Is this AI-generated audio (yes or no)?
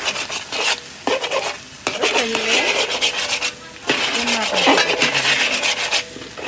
no